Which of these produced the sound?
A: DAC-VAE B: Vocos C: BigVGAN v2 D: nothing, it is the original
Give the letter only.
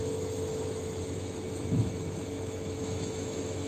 A